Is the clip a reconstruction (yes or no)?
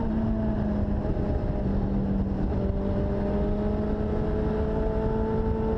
no